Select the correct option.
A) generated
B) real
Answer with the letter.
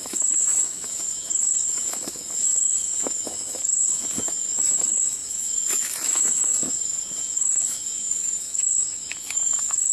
A